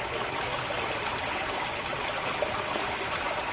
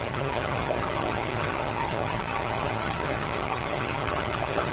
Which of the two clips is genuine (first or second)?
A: first